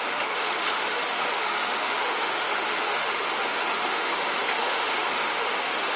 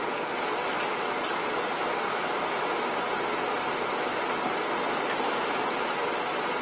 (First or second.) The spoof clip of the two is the first